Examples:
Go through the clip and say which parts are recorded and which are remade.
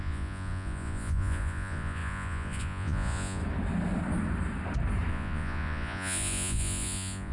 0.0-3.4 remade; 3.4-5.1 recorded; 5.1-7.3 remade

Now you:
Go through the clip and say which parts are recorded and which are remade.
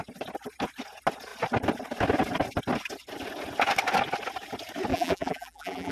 0.0-4.9 recorded; 4.9-5.9 remade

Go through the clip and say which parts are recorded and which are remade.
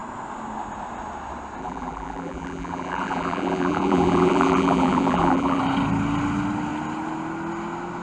0.0-1.6 recorded; 1.6-5.6 remade; 5.6-8.0 recorded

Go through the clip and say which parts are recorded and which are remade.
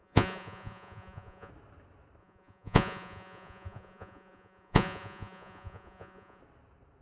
0.0-1.5 remade; 1.5-2.2 recorded; 2.2-6.4 remade; 6.4-7.0 recorded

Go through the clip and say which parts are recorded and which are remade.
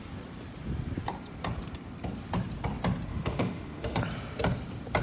0.0-3.1 recorded; 3.1-4.0 remade; 4.0-5.0 recorded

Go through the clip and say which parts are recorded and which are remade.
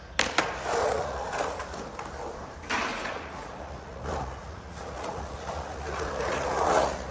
0.0-0.8 recorded; 0.8-1.6 remade; 1.6-2.9 recorded; 2.9-7.1 remade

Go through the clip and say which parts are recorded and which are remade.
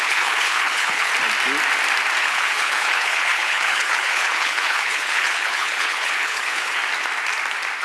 0.0-1.1 remade; 1.1-2.2 recorded; 2.2-6.8 remade; 6.8-7.8 recorded